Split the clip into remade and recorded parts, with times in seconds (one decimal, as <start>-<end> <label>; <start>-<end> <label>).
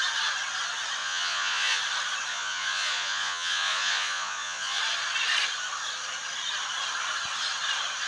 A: 0.0-1.0 recorded; 1.0-1.8 remade; 1.8-2.3 recorded; 2.3-4.8 remade; 4.8-8.1 recorded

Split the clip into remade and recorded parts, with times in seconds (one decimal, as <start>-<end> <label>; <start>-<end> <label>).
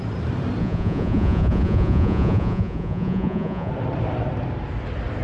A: 0.0-0.6 recorded; 0.6-3.7 remade; 3.7-5.2 recorded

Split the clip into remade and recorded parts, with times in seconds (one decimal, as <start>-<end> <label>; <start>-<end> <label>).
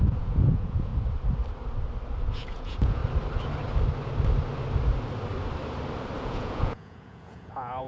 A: 0.0-0.9 remade; 0.9-2.3 recorded; 2.3-3.0 remade; 3.0-6.2 recorded; 6.2-7.9 remade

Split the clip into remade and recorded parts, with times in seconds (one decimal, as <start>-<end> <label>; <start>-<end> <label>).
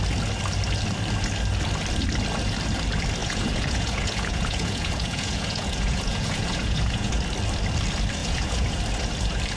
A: 0.0-3.2 recorded; 3.2-7.1 remade; 7.1-8.2 recorded; 8.2-8.8 remade; 8.8-9.6 recorded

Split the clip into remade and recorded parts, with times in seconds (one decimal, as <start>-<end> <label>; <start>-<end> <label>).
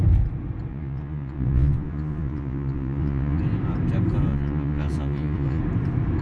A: 0.0-0.7 recorded; 0.7-3.4 remade; 3.4-4.3 recorded; 4.3-5.6 remade; 5.6-6.2 recorded